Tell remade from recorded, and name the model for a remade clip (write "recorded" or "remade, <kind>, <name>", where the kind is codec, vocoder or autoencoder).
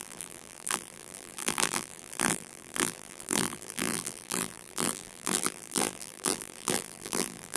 remade, vocoder, BigVGAN v2